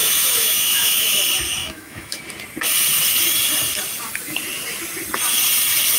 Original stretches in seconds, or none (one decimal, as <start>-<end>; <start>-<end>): 1.2-1.6; 2.2-6.0